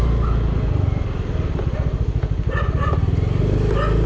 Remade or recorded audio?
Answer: recorded